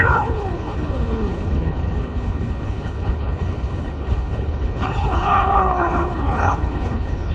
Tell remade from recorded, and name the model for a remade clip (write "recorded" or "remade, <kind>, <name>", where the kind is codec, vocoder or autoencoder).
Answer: remade, codec, HILCodec